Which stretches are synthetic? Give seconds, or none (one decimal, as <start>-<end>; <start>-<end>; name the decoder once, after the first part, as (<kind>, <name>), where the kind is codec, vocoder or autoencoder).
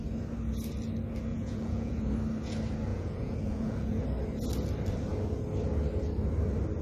1.3-2.1 (vocoder, Vocos); 2.9-4.0